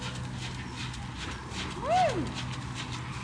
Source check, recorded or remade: recorded